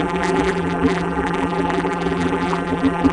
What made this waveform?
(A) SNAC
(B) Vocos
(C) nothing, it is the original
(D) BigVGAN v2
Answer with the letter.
D